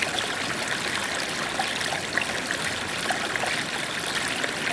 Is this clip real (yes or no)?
yes